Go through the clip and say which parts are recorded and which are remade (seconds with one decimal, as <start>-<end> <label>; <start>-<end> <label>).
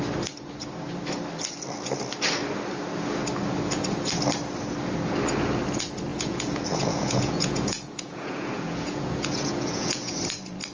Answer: 0.0-6.1 recorded; 6.1-10.1 remade; 10.1-10.7 recorded